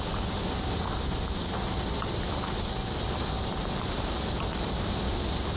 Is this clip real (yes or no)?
yes